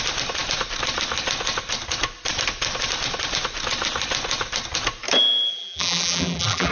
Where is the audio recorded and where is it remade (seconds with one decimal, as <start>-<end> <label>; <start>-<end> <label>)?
0.0-5.5 recorded; 5.5-6.7 remade